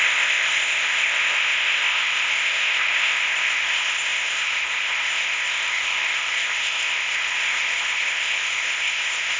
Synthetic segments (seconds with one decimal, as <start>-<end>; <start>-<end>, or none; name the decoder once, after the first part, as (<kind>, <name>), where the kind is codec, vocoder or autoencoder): 0.0-9.4 (codec, ZipCodec)